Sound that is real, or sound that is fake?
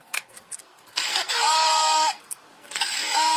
fake